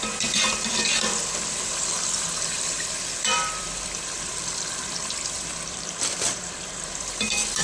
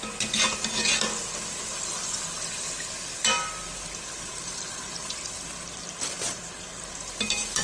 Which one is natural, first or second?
second